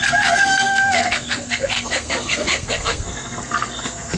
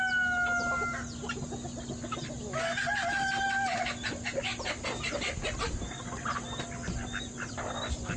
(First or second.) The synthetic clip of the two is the first